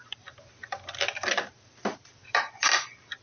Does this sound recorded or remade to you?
remade